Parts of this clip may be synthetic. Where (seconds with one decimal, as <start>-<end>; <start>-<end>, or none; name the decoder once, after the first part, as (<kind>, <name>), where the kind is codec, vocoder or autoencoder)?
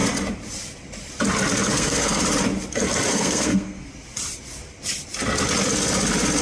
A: 1.7-2.2 (codec, SNAC); 3.1-3.9